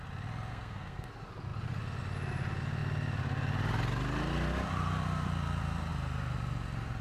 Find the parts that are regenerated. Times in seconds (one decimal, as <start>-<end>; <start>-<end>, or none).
0.5-1.1